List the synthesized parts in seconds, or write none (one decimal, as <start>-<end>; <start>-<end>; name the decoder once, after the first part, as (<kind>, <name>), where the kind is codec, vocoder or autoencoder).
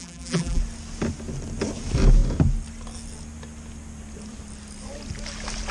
0.0-0.6 (vocoder, BigVGAN v2)